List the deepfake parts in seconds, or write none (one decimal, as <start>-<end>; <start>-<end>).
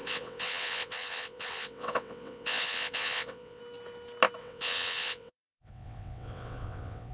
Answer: 0.0-3.6; 4.4-7.1